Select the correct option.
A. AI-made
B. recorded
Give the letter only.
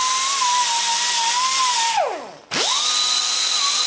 B